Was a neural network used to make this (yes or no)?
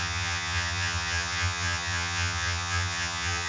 yes